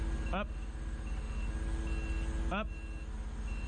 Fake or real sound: real